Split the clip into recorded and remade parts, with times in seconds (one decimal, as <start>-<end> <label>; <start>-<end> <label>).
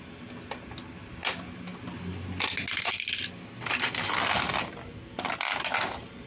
0.0-6.3 recorded